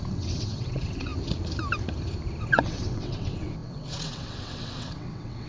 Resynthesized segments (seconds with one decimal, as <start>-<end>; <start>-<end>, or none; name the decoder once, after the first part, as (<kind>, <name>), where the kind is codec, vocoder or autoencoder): 0.0-1.1 (vocoder, WaveNeXt); 2.4-5.5